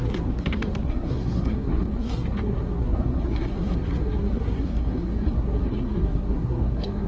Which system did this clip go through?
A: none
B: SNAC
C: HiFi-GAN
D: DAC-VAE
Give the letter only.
B